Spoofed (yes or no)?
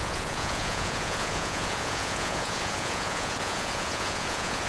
yes